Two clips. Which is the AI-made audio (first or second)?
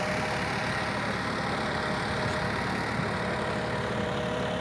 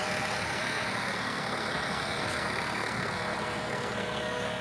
second